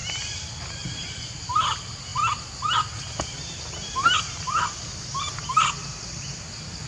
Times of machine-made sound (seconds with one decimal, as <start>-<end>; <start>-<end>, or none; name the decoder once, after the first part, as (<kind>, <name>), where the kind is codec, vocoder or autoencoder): none